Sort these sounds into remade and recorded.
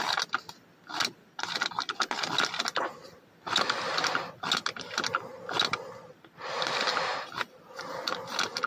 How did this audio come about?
recorded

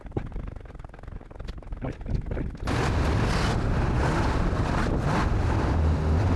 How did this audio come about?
recorded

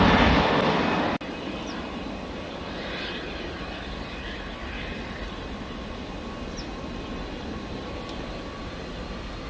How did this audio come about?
recorded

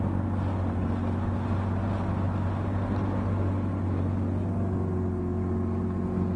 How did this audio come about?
recorded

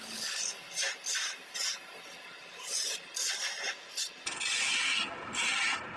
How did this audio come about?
recorded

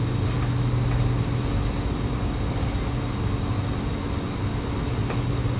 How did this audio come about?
recorded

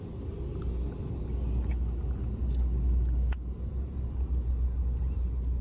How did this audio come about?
recorded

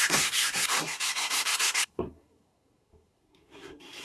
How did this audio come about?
remade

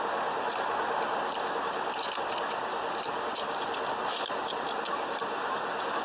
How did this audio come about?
recorded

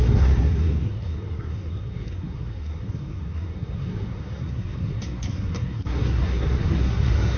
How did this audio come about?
remade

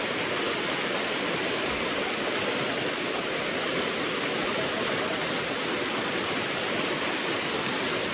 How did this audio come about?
recorded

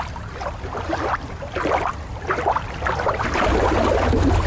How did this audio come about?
recorded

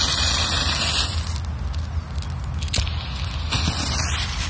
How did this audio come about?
recorded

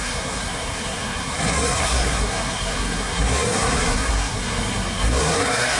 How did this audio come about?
remade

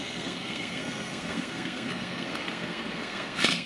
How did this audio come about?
remade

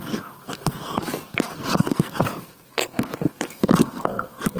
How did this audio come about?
remade